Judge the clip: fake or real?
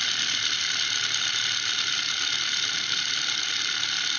real